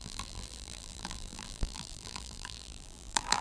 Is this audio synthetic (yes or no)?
yes